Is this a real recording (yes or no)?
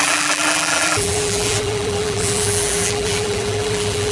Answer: no